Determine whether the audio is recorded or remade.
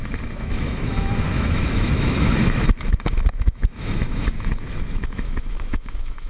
remade